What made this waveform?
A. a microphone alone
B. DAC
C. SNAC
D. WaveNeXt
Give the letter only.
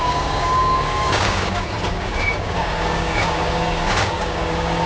B